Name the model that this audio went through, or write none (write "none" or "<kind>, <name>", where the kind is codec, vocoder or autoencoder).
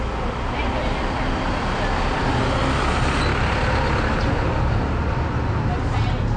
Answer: none